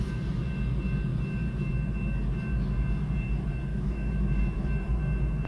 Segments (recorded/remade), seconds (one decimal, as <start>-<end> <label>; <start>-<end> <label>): 0.0-3.7 recorded; 3.7-4.7 remade; 4.7-5.5 recorded